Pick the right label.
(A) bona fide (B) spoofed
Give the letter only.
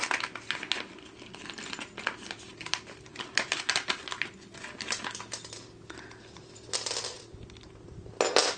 A